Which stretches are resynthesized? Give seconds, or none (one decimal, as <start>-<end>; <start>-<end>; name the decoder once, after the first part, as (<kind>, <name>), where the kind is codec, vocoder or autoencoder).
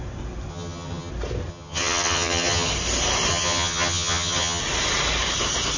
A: 0.5-1.1 (vocoder, HiFi-GAN); 1.5-2.7; 3.3-4.6